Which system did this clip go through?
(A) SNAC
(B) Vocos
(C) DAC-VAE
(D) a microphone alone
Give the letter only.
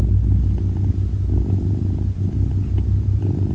D